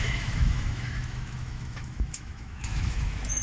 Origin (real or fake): fake